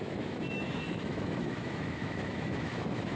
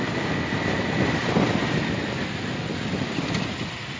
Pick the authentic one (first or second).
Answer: second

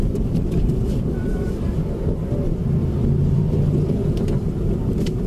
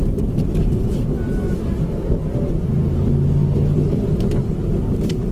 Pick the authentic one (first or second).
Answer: second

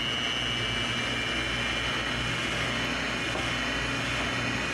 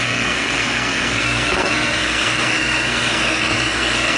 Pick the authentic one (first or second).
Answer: first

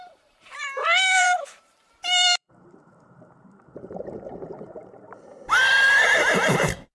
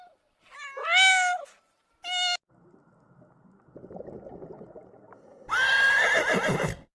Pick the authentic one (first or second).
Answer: second